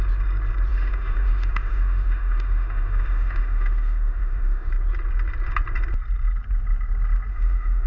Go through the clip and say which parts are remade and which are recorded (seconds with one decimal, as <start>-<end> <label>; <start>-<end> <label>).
0.0-0.7 recorded; 0.7-4.7 remade; 4.7-7.3 recorded; 7.3-7.9 remade